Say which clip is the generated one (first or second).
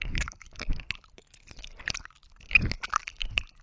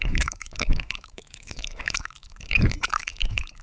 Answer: second